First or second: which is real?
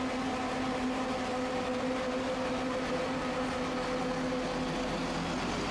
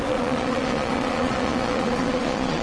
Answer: first